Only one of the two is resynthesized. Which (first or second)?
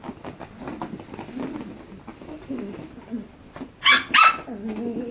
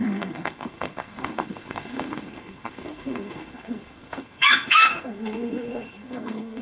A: second